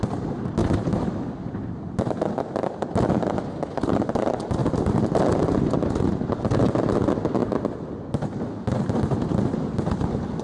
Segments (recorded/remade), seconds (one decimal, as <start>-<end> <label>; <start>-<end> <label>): 0.0-10.4 recorded